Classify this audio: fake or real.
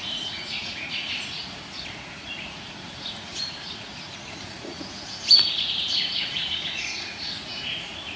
fake